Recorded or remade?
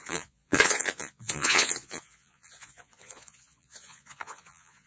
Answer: remade